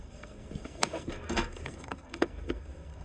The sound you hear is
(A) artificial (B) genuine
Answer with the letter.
A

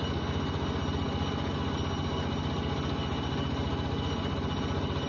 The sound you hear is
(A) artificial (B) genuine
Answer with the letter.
B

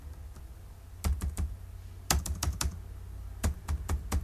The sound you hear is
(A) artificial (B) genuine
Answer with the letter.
B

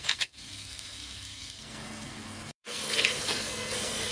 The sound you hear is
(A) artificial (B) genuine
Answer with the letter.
A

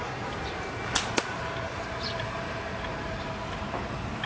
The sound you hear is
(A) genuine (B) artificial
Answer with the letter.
A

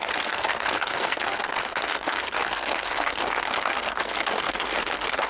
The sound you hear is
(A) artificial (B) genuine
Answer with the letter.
A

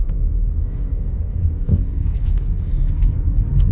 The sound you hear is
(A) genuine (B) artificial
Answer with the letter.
B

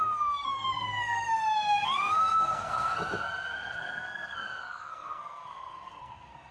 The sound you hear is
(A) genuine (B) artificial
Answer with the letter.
B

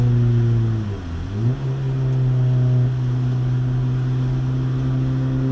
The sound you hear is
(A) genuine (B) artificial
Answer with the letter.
A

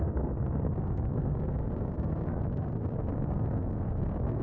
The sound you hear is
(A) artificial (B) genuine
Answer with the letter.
A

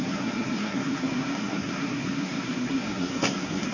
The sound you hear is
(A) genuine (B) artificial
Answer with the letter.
B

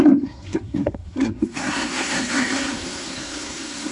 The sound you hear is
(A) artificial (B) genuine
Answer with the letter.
A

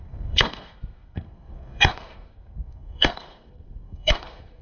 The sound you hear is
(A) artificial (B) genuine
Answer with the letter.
A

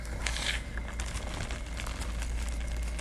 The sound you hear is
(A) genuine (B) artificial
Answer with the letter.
A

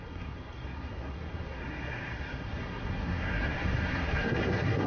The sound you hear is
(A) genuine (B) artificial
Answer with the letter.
B